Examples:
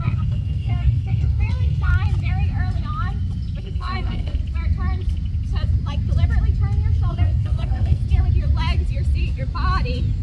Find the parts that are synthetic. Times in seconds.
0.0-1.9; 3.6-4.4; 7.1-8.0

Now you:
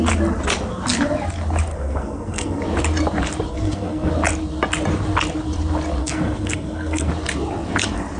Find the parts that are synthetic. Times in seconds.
1.7-2.6; 3.5-4.1; 6.0-7.1

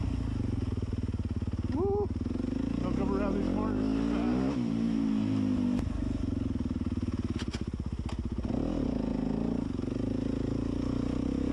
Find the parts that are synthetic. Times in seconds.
none

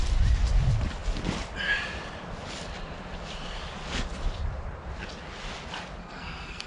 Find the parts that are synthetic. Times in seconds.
6.0-6.7

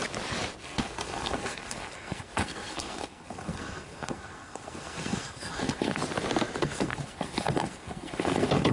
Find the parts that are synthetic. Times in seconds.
0.6-6.0; 6.6-8.7